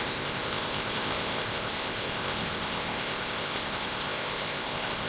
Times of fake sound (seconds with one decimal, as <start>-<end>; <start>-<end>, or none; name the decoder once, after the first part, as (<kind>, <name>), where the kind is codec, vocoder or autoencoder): 0.0-5.1 (codec, ZipCodec)